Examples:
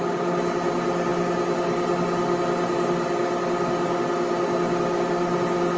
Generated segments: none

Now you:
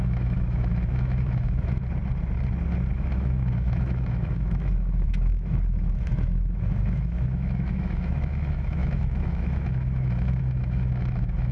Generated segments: 0.0-1.8 (autoencoder, DAC-VAE); 2.9-11.5

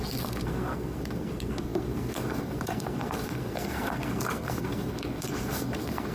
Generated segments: 0.0-6.1 (codec, SNAC)

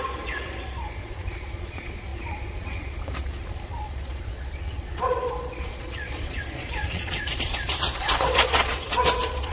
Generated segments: 0.0-9.5 (vocoder, Vocos)

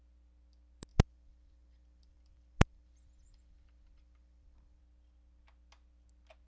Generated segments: 0.9-4.8 (vocoder, BigVGAN v2)

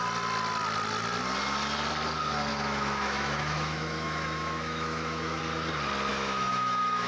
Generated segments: 2.5-5.4 (autoencoder, DAC-VAE); 6.1-7.1

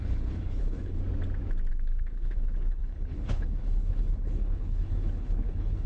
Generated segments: 0.0-1.0 (codec, HILCodec); 1.7-5.9